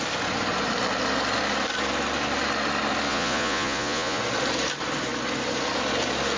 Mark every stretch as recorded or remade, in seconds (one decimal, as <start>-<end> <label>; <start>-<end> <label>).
0.0-3.1 recorded; 3.1-4.2 remade; 4.2-6.4 recorded